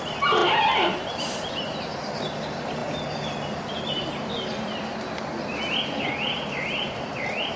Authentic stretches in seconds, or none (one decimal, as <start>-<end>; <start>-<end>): 0.0-7.6